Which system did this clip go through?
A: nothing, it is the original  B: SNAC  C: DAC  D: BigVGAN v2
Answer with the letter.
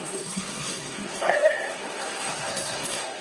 B